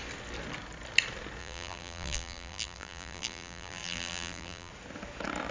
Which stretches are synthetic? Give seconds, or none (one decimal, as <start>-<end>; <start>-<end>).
1.4-4.7